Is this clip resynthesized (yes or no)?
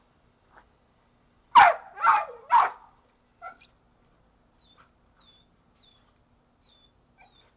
no